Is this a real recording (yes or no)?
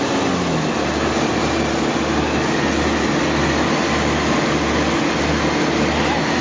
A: yes